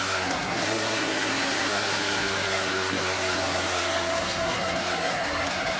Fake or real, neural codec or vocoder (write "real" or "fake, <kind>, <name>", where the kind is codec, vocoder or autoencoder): fake, codec, SNAC